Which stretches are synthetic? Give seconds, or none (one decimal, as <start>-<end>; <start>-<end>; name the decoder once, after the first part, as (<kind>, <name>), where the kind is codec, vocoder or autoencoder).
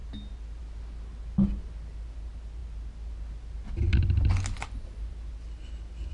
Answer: none